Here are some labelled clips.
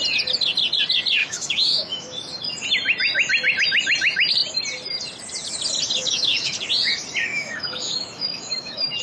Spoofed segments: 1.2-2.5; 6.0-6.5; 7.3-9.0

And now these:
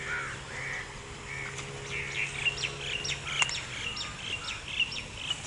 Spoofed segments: none

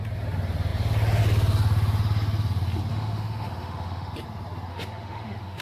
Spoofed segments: 2.9-4.1; 4.7-5.6

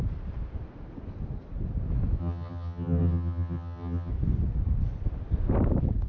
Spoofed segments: 2.2-4.1

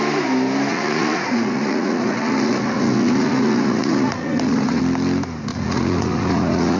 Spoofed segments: 0.7-4.8; 5.5-6.8